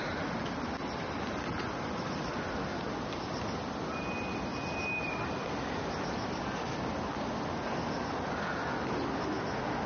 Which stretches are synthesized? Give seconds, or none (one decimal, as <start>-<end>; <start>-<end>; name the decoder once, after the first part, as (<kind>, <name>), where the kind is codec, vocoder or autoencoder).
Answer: none